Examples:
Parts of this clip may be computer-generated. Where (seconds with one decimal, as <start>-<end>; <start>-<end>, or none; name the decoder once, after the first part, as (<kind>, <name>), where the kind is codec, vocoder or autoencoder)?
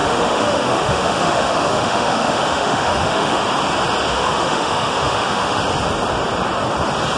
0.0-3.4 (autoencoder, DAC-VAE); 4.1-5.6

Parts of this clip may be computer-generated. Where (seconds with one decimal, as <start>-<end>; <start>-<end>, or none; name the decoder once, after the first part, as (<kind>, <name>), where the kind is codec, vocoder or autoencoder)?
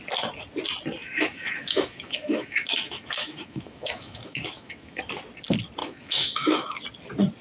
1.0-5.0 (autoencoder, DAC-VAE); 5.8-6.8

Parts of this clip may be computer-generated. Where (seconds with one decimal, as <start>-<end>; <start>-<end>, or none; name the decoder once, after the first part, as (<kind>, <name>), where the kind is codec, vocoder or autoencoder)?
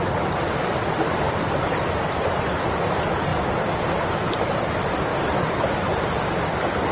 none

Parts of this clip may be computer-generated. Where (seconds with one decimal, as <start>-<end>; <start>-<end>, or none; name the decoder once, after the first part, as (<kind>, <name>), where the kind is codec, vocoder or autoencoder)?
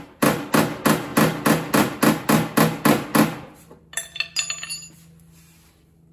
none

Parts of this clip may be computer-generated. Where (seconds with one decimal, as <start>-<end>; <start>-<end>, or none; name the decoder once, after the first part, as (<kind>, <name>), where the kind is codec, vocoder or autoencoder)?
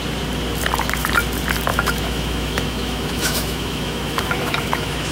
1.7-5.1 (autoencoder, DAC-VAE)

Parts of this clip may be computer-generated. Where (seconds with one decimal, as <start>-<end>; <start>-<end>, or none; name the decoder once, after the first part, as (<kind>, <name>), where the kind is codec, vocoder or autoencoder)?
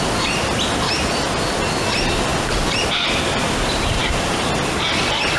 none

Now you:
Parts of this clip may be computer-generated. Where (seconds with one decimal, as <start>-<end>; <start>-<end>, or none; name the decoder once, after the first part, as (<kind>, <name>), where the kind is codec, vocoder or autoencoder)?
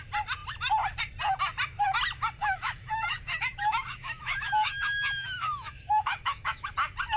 2.4-6.7 (autoencoder, DAC-VAE)